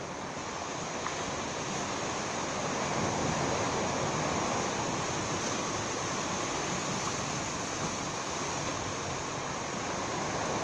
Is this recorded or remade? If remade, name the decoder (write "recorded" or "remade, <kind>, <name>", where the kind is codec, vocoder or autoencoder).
recorded